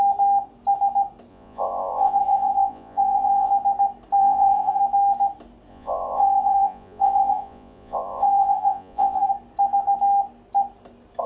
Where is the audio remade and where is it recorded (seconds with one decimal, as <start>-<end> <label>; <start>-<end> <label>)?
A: 0.0-1.3 recorded; 1.3-3.5 remade; 3.5-4.2 recorded; 4.2-4.8 remade; 4.8-5.7 recorded; 5.7-9.3 remade; 9.3-11.3 recorded